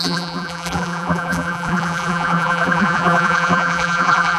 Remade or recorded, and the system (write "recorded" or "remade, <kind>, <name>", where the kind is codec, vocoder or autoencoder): remade, vocoder, BigVGAN v2